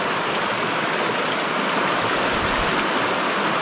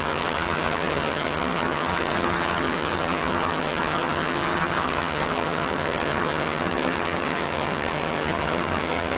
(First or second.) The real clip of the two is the first